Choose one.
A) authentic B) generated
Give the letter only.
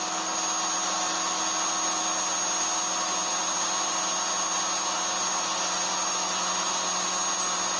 A